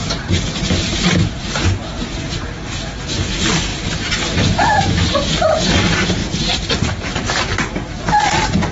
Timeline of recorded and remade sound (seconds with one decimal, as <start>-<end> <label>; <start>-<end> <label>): 0.0-3.2 remade; 3.2-3.7 recorded; 3.7-4.2 remade; 4.2-6.2 recorded; 6.2-7.5 remade; 7.5-8.7 recorded